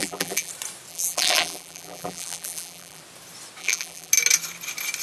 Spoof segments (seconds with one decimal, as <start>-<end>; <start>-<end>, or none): 0.0-0.5; 0.9-3.0; 3.6-4.1